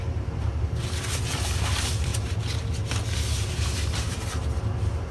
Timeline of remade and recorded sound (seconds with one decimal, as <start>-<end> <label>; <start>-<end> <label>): 0.0-2.1 remade; 2.1-4.0 recorded; 4.0-5.1 remade